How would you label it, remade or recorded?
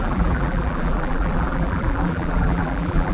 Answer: remade